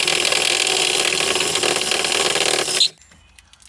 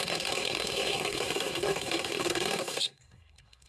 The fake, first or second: second